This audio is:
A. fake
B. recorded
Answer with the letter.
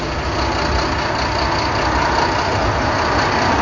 B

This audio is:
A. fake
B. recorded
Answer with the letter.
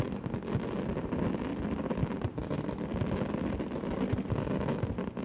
B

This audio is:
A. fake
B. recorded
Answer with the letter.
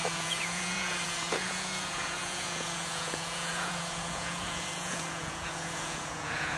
A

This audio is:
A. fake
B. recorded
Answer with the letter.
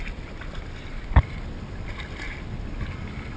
B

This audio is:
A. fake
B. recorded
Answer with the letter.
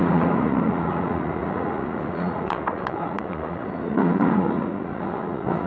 A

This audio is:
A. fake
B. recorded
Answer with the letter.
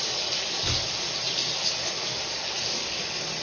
B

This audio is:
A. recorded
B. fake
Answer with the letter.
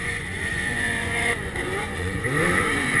B